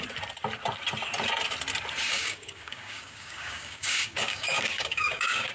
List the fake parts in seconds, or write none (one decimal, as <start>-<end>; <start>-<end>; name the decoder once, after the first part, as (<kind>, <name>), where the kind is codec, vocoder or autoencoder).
2.1-5.5 (codec, DAC)